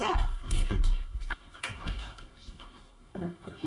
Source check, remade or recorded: remade